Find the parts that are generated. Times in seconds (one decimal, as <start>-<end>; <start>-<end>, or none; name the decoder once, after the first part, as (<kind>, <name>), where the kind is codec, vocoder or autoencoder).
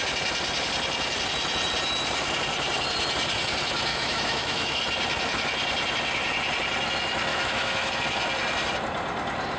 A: 3.9-4.8 (autoencoder, DAC-VAE); 7.3-7.9